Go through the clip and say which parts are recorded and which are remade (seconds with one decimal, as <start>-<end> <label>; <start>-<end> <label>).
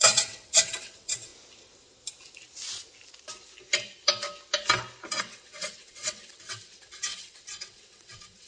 0.0-1.3 remade; 1.3-5.2 recorded; 5.2-8.5 remade